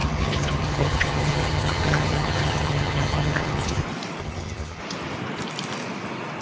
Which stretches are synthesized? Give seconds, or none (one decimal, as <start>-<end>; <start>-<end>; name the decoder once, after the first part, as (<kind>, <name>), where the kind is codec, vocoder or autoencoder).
0.0-3.8 (vocoder, HiFi-GAN); 4.2-4.8